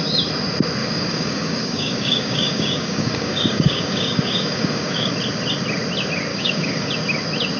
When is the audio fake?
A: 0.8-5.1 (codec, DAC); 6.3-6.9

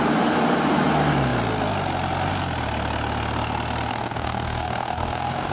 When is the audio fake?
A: 3.9-5.5 (codec, DAC)

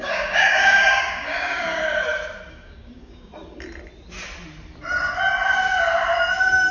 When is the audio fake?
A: 0.0-1.8 (codec, DAC); 2.5-3.3

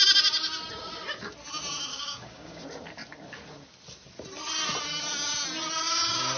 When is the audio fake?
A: 1.9-2.6 (codec, DAC)